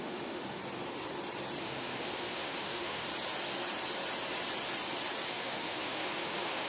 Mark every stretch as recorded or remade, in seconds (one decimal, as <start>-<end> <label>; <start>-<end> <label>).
0.0-0.6 remade; 0.6-1.6 recorded; 1.6-3.1 remade; 3.1-5.3 recorded; 5.3-6.7 remade